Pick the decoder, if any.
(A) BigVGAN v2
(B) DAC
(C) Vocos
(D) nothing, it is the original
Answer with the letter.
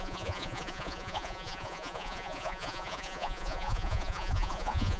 C